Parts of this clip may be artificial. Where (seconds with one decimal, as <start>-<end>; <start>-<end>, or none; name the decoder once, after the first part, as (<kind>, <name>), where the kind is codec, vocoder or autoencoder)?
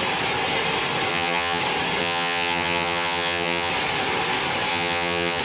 1.1-1.6 (vocoder, HiFi-GAN); 2.0-3.7; 4.7-5.4